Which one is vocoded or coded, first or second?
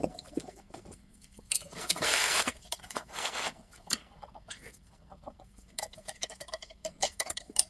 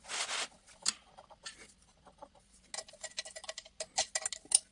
first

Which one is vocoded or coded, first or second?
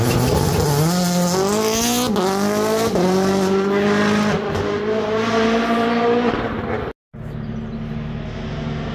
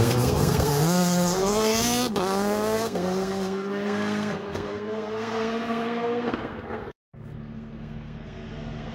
second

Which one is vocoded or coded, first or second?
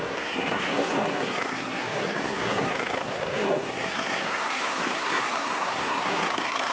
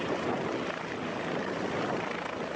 first